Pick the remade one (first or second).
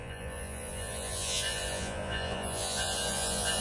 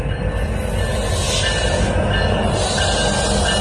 first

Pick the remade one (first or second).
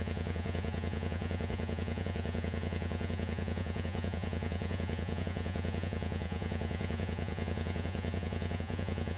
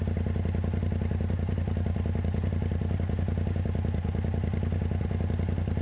first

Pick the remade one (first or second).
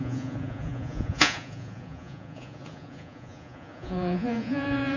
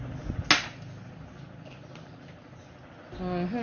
first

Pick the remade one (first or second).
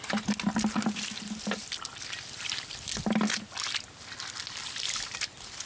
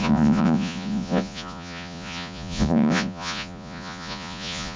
second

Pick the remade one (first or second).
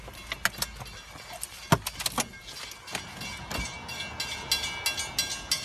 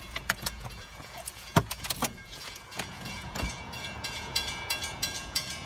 second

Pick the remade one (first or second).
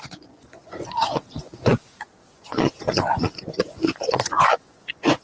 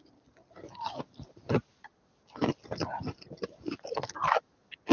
first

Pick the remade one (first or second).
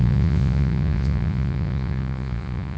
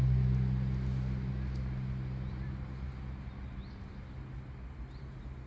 first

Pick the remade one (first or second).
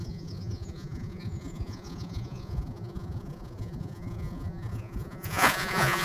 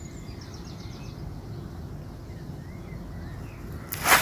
first